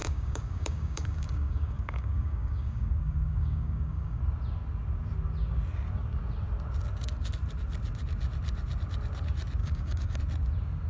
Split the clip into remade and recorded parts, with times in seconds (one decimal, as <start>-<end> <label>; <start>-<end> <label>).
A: 0.0-4.2 remade; 4.2-9.6 recorded; 9.6-10.2 remade; 10.2-10.9 recorded